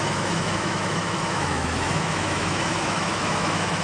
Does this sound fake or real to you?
fake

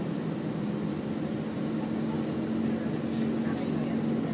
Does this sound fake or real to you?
real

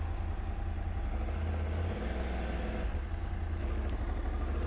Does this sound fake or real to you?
real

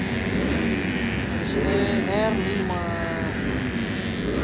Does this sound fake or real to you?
real